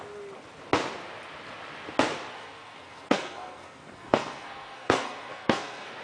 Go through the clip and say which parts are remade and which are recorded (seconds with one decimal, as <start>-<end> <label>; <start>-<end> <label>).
0.0-2.3 recorded; 2.3-6.0 remade